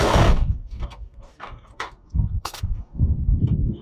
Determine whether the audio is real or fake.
fake